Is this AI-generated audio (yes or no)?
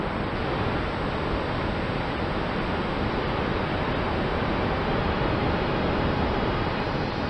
no